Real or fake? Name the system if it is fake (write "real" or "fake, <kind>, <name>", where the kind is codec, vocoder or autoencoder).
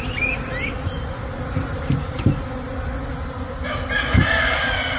real